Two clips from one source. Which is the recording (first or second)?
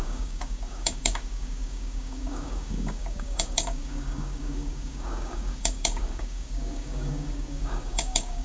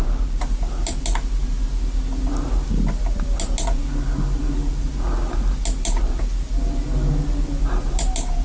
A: second